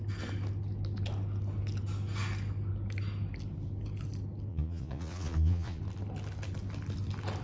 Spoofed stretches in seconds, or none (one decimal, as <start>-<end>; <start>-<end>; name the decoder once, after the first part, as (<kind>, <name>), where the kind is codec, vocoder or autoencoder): 4.5-5.8 (vocoder, Vocos)

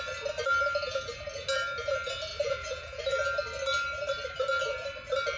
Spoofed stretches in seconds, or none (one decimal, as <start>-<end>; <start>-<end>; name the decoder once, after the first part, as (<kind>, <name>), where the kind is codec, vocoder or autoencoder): 2.3-3.0 (vocoder, Vocos)